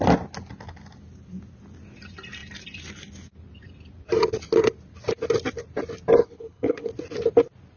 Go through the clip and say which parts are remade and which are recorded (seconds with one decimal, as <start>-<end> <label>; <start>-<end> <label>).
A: 0.0-6.2 recorded; 6.2-6.9 remade; 6.9-7.8 recorded